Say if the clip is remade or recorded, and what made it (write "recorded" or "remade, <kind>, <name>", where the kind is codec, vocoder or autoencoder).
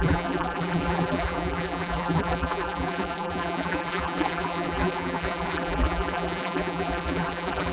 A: remade, vocoder, BigVGAN v2